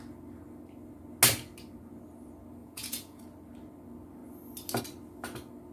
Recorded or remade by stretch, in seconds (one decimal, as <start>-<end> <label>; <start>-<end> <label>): 0.0-2.6 recorded; 2.6-3.2 remade; 3.2-5.7 recorded